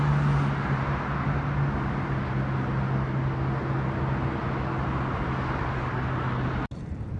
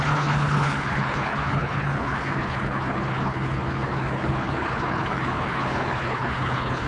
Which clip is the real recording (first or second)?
first